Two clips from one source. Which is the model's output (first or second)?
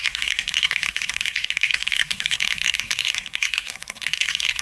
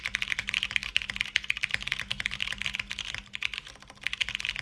first